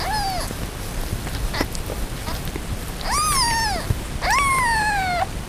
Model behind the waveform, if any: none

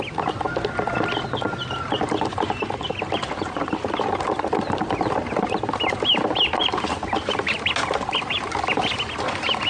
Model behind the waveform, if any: none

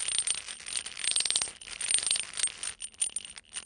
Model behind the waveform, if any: none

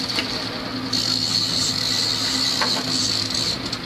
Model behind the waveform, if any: none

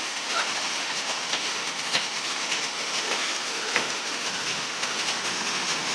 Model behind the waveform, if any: autoencoder, DAC-VAE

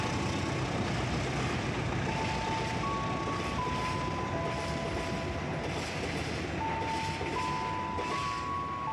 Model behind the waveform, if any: none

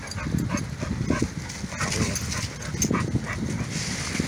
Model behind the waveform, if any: none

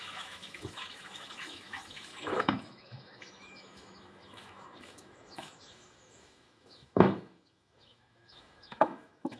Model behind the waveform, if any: autoencoder, DAC-VAE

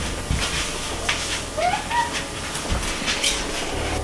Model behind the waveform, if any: none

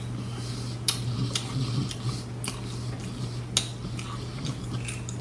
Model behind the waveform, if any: none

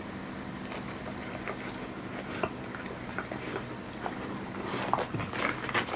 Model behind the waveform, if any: none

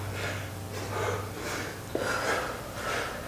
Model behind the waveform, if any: none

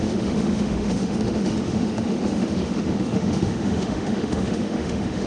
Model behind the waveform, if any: autoencoder, DAC-VAE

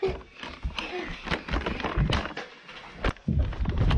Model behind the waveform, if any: none